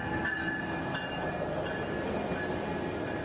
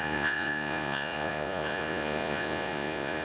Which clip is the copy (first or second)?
second